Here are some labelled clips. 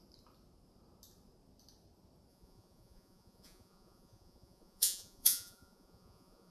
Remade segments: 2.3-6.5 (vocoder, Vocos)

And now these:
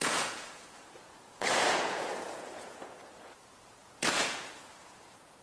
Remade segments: 0.0-5.4 (vocoder, Vocos)

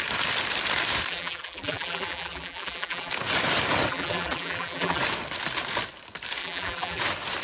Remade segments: 1.1-3.1 (vocoder, BigVGAN v2); 3.9-5.0; 6.4-7.0

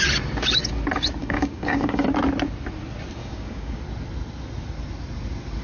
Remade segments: 1.2-2.1 (codec, DAC); 3.2-3.8

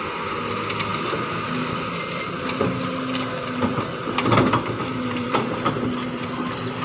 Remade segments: 4.8-5.6 (vocoder, BigVGAN v2)

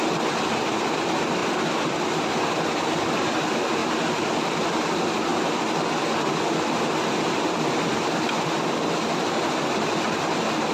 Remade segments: none